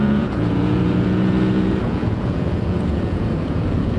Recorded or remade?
remade